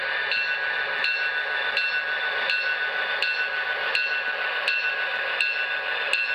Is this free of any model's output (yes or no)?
yes